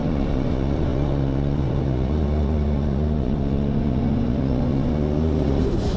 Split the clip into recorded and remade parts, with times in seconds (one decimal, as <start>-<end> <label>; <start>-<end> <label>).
0.0-6.0 remade